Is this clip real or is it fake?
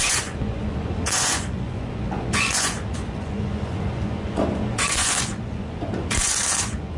fake